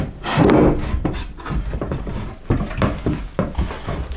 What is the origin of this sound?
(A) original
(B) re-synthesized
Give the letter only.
A